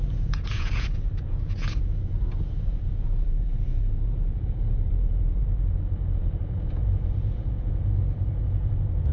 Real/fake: fake